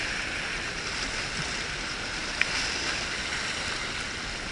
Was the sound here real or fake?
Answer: real